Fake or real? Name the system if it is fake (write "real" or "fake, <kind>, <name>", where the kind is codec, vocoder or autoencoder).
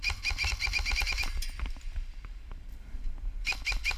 real